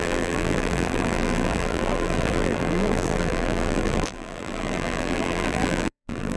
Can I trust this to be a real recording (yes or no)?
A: no